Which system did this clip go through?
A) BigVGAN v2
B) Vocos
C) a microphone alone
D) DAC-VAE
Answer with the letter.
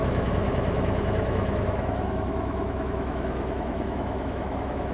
D